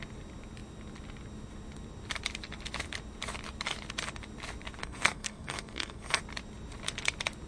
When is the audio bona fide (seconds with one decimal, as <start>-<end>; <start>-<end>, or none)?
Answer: 0.0-4.8; 6.2-7.5